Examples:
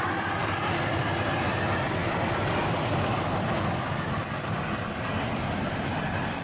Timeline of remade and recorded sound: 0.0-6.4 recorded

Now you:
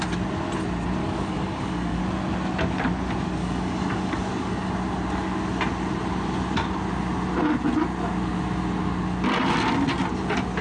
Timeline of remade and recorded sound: 0.0-1.0 recorded; 1.0-2.0 remade; 2.0-3.4 recorded; 3.4-4.7 remade; 4.7-10.6 recorded

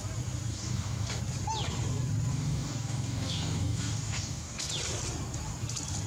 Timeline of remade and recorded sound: 0.0-0.5 recorded; 0.5-1.2 remade; 1.2-2.3 recorded; 2.3-4.7 remade; 4.7-6.1 recorded

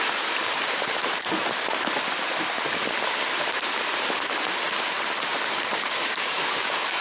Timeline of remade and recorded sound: 0.0-5.7 recorded; 5.7-7.0 remade

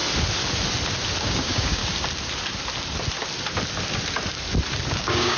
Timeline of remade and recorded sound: 0.0-1.2 recorded; 1.2-1.8 remade; 1.8-5.0 recorded; 5.0-5.4 remade

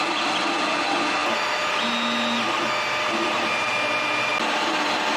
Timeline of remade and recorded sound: 0.0-5.2 recorded